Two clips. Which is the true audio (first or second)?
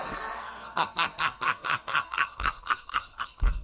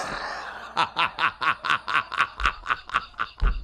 second